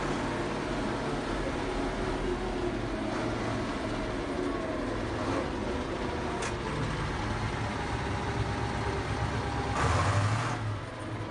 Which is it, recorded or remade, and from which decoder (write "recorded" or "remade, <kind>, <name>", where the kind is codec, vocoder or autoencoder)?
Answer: recorded